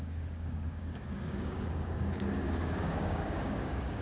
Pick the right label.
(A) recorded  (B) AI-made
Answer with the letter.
B